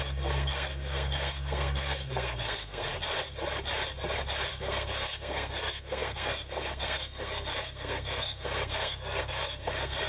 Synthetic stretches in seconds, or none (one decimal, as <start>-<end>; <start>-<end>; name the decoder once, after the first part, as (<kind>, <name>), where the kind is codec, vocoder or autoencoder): 0.0-2.9 (codec, SNAC); 4.5-10.1